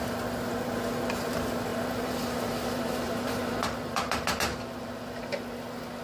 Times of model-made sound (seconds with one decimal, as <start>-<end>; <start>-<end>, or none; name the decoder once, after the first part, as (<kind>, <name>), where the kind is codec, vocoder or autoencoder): 1.7-5.3 (vocoder, BigVGAN v2)